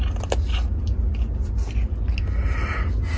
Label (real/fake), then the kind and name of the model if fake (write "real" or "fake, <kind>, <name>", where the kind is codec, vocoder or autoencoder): real